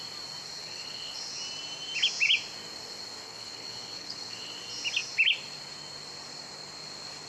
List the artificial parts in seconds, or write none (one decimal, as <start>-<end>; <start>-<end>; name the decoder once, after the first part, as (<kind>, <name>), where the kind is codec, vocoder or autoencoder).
0.6-1.1 (codec, HILCodec); 3.2-4.5